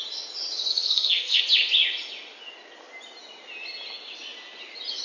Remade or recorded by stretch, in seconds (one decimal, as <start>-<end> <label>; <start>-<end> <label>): 0.0-0.7 recorded; 0.7-1.4 remade; 1.4-5.0 recorded